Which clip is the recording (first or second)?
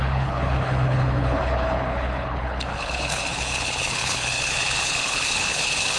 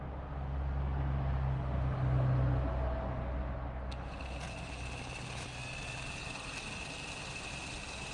second